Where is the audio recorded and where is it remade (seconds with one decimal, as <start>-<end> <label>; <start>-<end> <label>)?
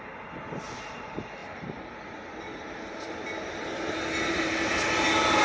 0.0-5.4 recorded